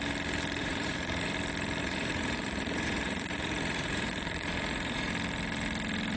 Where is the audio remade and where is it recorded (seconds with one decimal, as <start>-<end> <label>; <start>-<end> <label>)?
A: 0.0-0.6 recorded; 0.6-1.3 remade; 1.3-1.8 recorded; 1.8-5.1 remade; 5.1-6.2 recorded